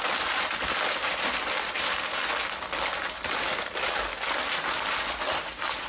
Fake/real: real